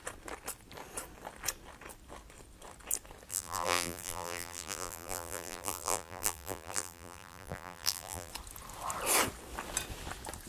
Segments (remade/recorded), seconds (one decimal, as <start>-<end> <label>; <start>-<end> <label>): 0.0-3.3 recorded; 3.3-8.3 remade; 8.3-10.5 recorded